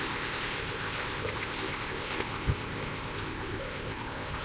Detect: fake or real fake